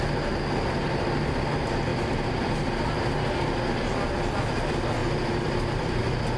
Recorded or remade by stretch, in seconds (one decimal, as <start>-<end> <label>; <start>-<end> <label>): 0.0-5.0 recorded; 5.0-6.0 remade; 6.0-6.4 recorded